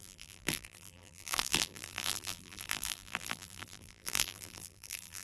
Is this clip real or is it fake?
fake